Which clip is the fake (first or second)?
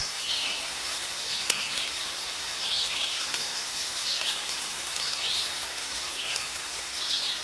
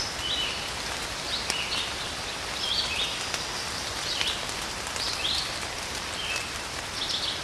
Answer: first